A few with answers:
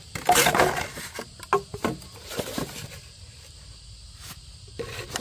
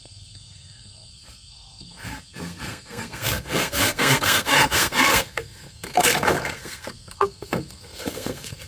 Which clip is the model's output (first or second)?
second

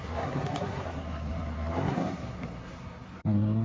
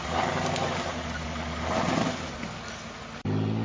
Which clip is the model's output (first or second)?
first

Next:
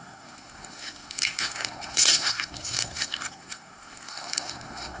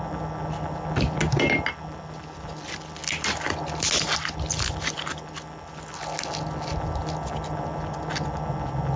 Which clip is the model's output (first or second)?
first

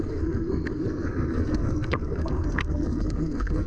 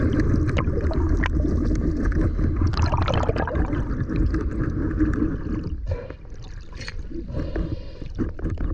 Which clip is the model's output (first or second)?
first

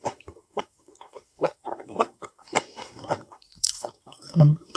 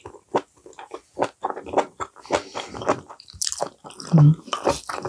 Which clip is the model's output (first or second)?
first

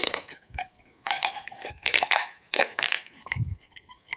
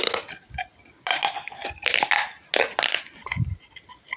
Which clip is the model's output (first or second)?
first